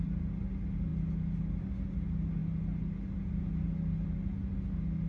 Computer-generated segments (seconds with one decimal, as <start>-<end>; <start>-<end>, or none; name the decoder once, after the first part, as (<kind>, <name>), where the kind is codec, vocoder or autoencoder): none

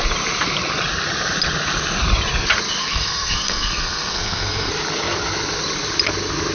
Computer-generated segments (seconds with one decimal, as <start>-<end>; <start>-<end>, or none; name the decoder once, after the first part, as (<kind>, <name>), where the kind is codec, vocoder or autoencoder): 2.8-4.7 (codec, SNAC)

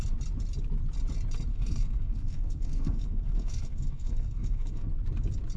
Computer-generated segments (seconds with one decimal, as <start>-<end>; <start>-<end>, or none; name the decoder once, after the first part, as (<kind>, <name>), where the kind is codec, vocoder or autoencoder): 1.5-4.9 (codec, SNAC)

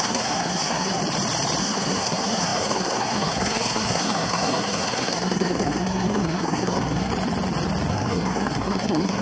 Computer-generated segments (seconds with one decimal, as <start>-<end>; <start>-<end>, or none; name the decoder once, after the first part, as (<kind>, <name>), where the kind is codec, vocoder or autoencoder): 0.0-1.0 (codec, SNAC); 1.6-7.1; 7.9-9.2

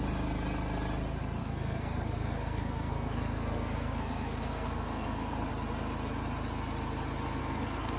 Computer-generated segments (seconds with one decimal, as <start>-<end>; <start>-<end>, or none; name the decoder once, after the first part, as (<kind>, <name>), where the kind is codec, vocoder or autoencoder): 1.4-5.5 (codec, SNAC); 7.4-8.0

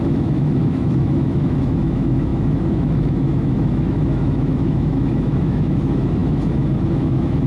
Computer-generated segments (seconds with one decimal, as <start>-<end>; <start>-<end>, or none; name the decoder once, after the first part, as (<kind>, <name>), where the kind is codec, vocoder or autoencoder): 0.0-7.5 (autoencoder, DAC-VAE)

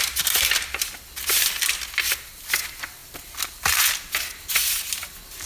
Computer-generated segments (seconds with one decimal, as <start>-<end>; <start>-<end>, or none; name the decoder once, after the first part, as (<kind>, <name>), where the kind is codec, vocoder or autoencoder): none

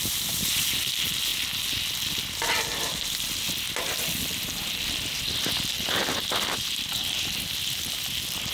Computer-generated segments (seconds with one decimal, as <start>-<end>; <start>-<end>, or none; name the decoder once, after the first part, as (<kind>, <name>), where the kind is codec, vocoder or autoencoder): none